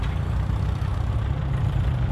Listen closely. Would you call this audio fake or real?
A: fake